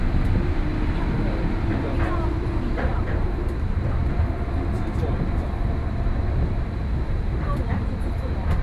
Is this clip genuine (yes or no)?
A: no